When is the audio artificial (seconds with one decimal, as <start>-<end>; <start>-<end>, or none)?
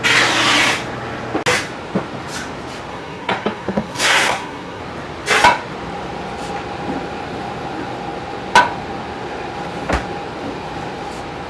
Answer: 2.9-4.8